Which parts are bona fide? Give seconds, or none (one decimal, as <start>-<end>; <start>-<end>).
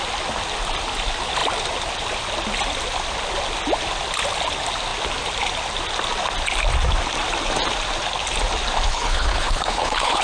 0.0-8.9